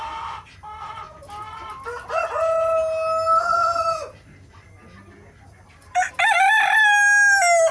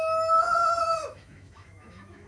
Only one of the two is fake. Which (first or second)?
second